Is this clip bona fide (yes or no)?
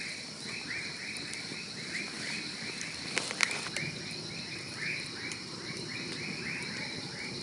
no